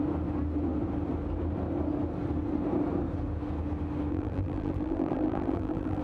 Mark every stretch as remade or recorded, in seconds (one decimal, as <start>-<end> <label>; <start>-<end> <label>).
0.0-4.1 recorded; 4.1-6.0 remade